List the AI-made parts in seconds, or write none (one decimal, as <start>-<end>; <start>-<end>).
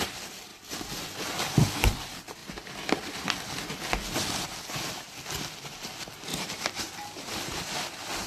6.3-7.6